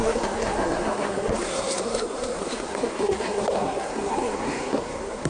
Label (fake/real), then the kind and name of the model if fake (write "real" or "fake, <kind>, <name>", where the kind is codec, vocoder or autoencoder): fake, codec, SNAC